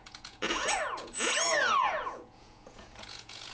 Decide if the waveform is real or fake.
fake